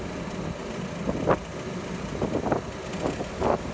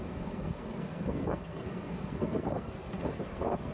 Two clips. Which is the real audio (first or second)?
first